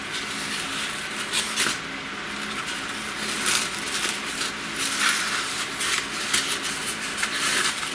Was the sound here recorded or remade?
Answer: recorded